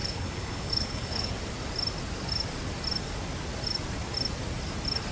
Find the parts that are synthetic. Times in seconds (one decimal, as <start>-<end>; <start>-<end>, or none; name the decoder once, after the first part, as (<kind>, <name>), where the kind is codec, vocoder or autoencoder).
0.0-1.3 (codec, HILCodec)